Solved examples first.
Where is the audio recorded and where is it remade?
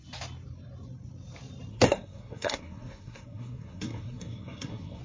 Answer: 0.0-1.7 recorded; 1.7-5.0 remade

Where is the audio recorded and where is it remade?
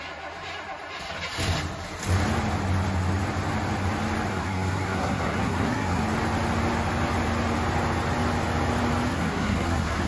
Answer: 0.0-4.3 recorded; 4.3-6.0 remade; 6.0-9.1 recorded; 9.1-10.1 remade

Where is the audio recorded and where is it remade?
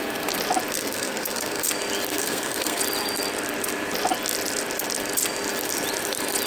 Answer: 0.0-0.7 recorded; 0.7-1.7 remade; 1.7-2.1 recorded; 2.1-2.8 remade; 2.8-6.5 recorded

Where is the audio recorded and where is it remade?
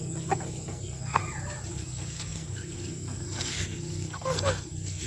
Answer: 0.0-1.2 remade; 1.2-1.7 recorded; 1.7-5.1 remade